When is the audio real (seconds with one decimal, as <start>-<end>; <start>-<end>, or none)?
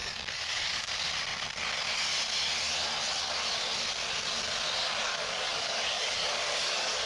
0.9-4.8